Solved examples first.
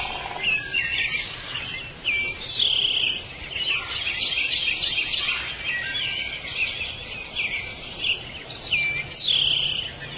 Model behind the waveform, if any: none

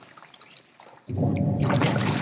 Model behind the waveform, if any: vocoder, BigVGAN v2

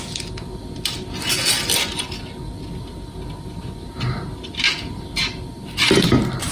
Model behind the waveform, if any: none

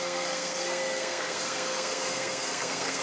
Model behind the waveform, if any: codec, SNAC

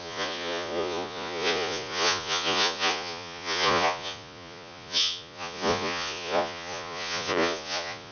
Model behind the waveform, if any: vocoder, Vocos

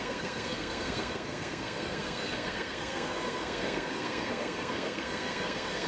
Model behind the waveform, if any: codec, SNAC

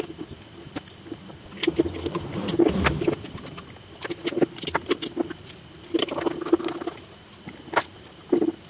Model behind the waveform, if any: none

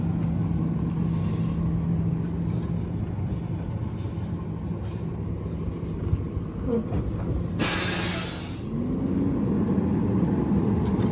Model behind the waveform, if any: none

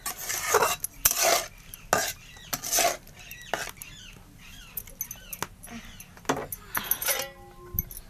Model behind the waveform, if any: none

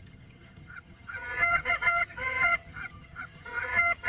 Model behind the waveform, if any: vocoder, HiFi-GAN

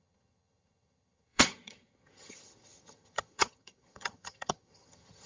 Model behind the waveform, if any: vocoder, HiFi-GAN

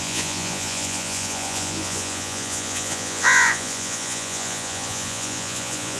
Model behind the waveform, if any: vocoder, Vocos